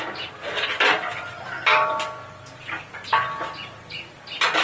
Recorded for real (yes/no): yes